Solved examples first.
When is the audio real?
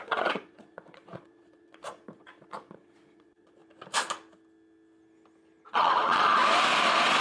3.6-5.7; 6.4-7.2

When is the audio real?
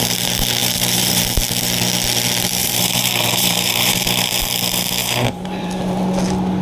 0.0-0.6; 1.2-2.6; 4.3-5.0; 6.0-6.6